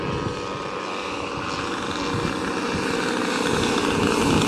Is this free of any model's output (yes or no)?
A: yes